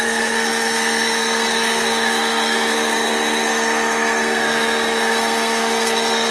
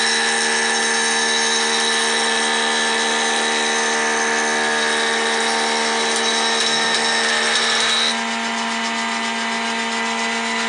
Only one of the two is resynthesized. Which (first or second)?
first